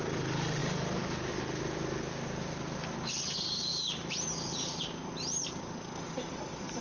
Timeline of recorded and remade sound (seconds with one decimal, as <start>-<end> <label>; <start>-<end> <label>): 0.0-6.8 recorded